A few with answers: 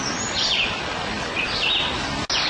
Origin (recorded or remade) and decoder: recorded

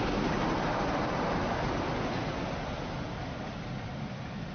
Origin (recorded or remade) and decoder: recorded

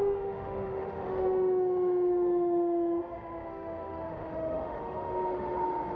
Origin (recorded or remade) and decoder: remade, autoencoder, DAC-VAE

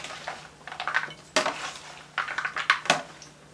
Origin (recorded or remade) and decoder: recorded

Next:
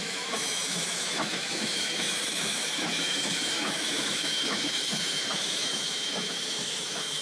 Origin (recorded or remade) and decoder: remade, autoencoder, DAC-VAE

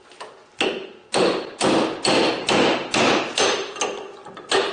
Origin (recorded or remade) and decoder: recorded